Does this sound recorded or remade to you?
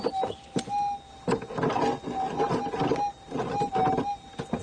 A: recorded